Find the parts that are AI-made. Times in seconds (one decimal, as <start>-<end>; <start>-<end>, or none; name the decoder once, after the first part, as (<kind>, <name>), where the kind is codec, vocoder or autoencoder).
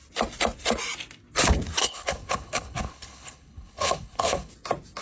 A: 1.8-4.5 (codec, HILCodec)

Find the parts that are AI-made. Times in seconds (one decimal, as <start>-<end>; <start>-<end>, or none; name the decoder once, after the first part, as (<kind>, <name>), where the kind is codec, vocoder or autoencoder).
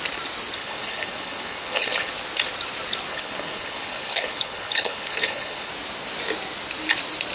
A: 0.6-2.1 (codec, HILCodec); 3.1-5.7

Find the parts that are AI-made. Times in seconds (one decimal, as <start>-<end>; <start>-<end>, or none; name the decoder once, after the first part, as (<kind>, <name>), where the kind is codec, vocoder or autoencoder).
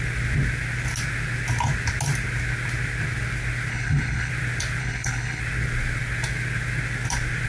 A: 3.7-4.3 (codec, HILCodec); 4.8-5.4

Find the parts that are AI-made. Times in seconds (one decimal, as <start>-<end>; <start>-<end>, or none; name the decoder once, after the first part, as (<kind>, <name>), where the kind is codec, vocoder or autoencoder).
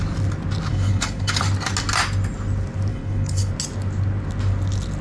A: 0.7-1.4 (codec, HILCodec); 2.9-3.5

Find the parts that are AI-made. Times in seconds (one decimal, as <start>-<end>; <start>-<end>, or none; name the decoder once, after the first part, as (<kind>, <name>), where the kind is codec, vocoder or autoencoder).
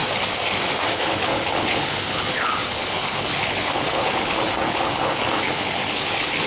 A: 0.9-6.5 (codec, HILCodec)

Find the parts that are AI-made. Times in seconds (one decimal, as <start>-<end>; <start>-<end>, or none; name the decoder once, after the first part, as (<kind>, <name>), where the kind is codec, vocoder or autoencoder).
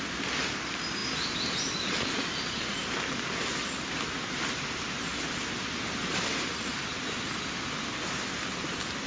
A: none